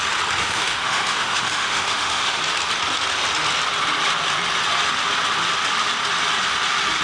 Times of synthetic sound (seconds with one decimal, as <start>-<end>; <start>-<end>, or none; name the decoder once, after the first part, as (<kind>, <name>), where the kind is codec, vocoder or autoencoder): 0.4-2.4 (autoencoder, DAC-VAE)